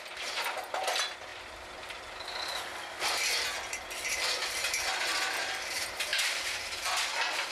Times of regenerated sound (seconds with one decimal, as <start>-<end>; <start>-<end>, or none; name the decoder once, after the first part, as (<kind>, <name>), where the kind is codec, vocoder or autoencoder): none